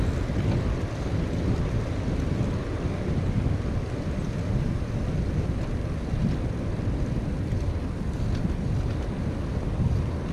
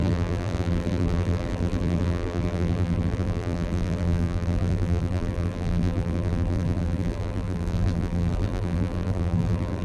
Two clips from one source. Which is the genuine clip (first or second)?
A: first